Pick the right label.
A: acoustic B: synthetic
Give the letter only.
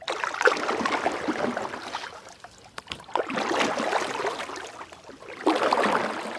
A